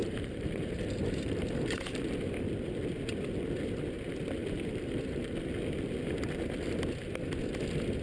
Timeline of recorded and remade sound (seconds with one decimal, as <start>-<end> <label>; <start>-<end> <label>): 0.0-2.1 remade; 2.1-4.4 recorded; 4.4-5.3 remade; 5.3-8.0 recorded